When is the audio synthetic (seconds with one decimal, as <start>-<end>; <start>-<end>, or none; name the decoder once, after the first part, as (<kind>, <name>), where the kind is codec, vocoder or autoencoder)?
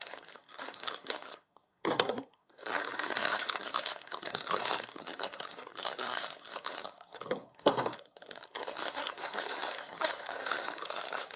0.0-11.4 (codec, SNAC)